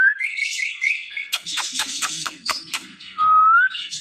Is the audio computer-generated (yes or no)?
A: yes